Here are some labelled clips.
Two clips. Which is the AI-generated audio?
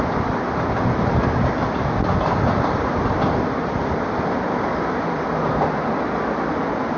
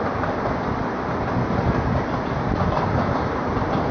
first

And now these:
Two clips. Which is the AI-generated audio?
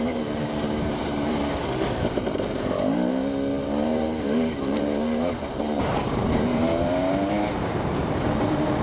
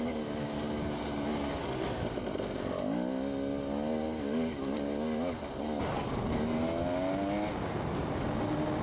first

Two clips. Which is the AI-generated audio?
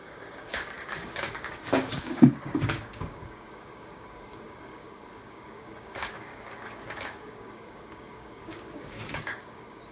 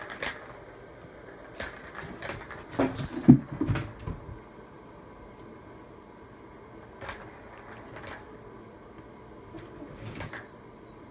first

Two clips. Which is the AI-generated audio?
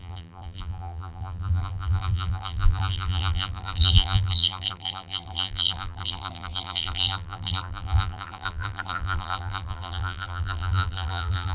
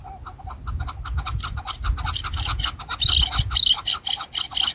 first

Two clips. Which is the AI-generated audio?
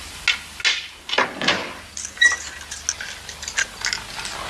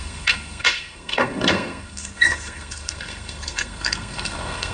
second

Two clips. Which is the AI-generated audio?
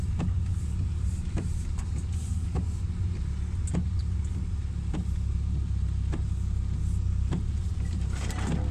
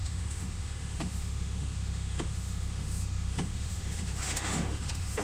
second